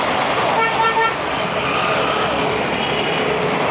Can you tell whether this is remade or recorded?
recorded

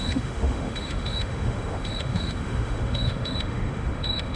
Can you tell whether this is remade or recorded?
remade